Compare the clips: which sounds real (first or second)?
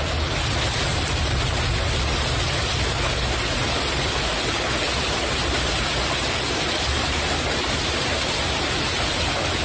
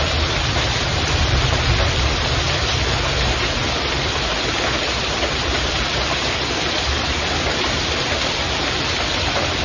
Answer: first